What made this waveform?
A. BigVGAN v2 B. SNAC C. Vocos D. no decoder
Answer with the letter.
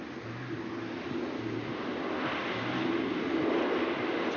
D